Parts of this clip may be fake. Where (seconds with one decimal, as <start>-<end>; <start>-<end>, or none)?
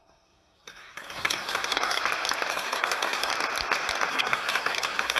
0.0-2.0; 2.5-3.3; 4.1-5.2